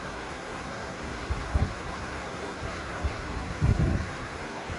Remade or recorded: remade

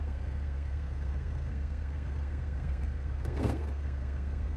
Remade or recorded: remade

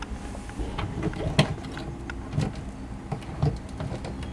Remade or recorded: recorded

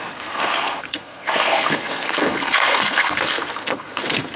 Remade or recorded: remade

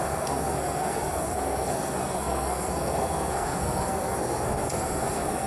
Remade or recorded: remade